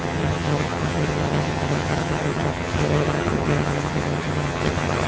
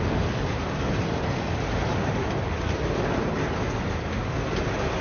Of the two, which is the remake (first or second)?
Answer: first